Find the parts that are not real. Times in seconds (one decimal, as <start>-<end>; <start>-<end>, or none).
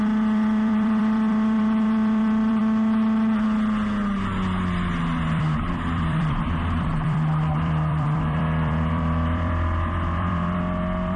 0.0-2.6; 5.2-11.2